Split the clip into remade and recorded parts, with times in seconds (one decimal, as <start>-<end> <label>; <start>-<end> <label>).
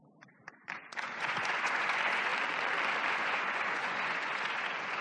0.0-2.3 remade; 2.3-3.1 recorded; 3.1-5.0 remade